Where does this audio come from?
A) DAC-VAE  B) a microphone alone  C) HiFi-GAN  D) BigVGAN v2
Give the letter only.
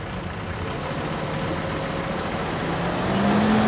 B